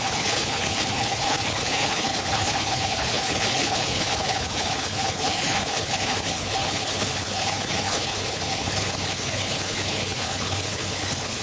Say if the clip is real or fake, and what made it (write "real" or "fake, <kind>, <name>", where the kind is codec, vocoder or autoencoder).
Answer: fake, codec, HILCodec